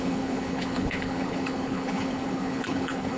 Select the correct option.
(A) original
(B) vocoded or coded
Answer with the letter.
B